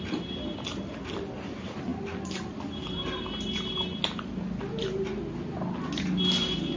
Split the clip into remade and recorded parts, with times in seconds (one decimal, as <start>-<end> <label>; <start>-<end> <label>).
0.0-6.8 recorded